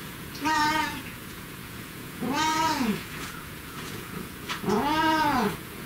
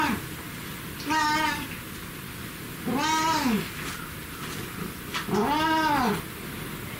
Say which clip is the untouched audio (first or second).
second